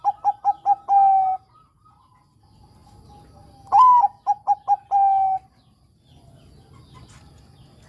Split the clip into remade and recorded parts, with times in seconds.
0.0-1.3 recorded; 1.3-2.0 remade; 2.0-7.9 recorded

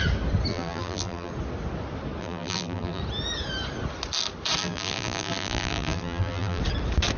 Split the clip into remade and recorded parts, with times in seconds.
0.0-0.5 recorded; 0.5-1.3 remade; 1.3-2.2 recorded; 2.2-3.0 remade; 3.0-4.6 recorded; 4.6-6.6 remade; 6.6-7.2 recorded

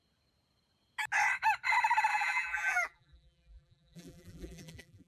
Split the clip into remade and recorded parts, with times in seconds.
0.0-2.1 recorded; 2.1-5.1 remade